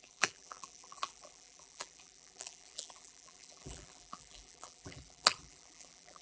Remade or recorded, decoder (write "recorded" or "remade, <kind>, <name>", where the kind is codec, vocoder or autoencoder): remade, vocoder, BigVGAN v2